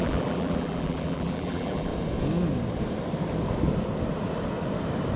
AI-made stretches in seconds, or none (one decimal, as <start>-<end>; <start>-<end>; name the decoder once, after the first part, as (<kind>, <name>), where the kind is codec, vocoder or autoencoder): 0.0-1.9 (vocoder, BigVGAN v2)